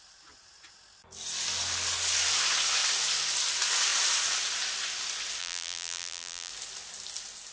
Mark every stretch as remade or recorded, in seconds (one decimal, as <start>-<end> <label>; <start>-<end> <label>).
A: 0.0-5.4 recorded; 5.4-6.5 remade; 6.5-7.5 recorded